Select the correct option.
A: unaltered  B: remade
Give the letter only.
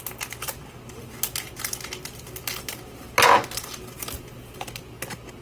A